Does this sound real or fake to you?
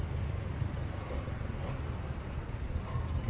real